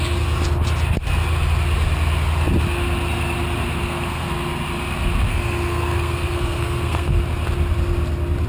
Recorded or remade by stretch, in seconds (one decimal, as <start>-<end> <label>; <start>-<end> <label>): 0.0-3.8 recorded; 3.8-4.3 remade; 4.3-5.3 recorded; 5.3-7.2 remade; 7.2-8.5 recorded